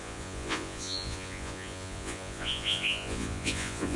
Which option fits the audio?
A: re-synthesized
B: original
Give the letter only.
A